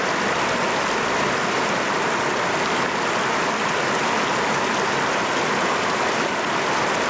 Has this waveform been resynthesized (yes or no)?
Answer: no